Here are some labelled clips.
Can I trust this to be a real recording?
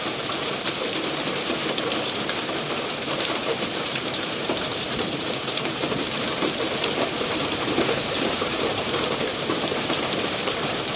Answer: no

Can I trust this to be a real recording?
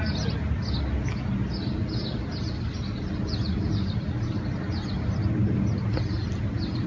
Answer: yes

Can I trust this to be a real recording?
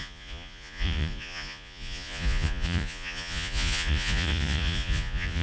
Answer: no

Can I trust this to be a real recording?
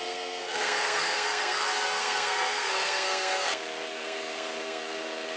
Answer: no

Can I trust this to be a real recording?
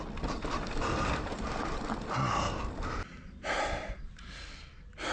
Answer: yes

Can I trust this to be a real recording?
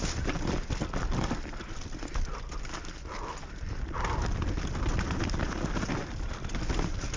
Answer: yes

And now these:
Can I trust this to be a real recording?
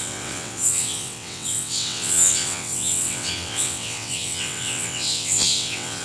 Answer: no